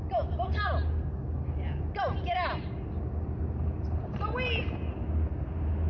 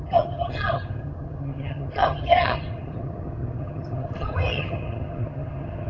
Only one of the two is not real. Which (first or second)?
second